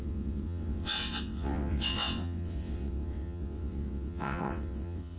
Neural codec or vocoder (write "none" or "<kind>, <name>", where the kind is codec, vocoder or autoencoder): vocoder, WaveNeXt